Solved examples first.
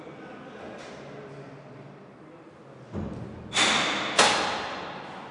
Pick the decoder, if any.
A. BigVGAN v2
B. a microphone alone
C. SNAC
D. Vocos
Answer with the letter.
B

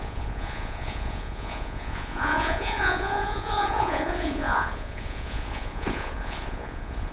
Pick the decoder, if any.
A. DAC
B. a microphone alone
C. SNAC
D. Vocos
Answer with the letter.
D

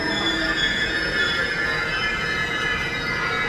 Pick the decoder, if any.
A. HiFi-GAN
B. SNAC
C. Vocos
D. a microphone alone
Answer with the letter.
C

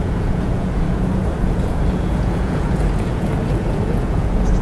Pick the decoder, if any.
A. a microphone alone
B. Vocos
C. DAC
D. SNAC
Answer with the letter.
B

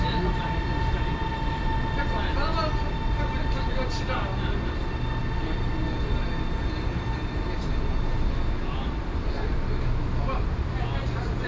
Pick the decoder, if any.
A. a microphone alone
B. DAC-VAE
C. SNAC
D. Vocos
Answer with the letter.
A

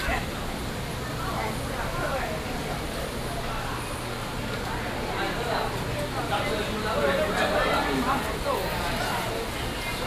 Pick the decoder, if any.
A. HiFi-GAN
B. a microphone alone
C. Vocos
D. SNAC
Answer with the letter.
B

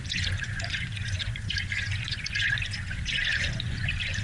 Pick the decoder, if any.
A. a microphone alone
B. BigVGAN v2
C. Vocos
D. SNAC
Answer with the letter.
C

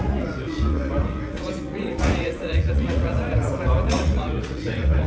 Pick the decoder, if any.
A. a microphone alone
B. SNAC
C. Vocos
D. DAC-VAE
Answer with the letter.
C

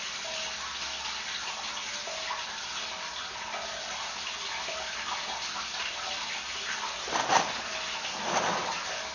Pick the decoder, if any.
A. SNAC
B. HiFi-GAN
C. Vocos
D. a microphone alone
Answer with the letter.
D